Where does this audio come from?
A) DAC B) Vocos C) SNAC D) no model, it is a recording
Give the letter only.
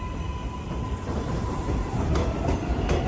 D